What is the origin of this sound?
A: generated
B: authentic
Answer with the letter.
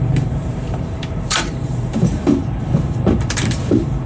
A